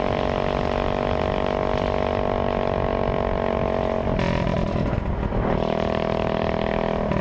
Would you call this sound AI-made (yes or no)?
no